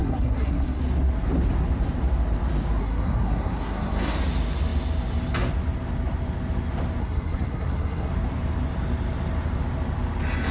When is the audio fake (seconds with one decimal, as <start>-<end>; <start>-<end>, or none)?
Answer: 0.0-0.8; 2.8-4.2; 7.0-8.1